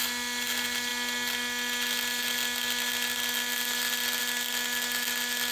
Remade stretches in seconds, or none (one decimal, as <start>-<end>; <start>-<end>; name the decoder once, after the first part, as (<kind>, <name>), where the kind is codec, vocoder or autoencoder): none